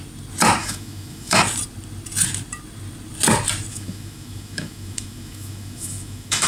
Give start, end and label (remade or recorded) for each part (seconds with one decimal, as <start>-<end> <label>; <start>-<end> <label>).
0.0-0.6 recorded; 0.6-1.4 remade; 1.4-3.7 recorded; 3.7-6.5 remade